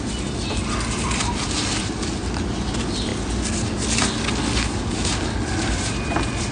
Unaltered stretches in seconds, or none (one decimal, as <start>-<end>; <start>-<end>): 0.0-6.5